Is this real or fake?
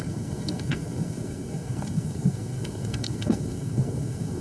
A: fake